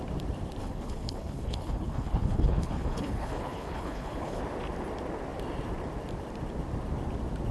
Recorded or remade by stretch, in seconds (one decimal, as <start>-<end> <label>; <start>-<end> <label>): 0.0-0.6 recorded; 0.6-4.4 remade; 4.4-7.5 recorded